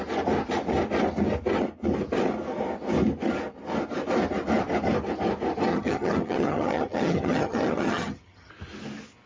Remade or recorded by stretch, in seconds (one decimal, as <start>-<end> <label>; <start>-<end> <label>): 0.0-5.7 recorded; 5.7-8.5 remade; 8.5-9.3 recorded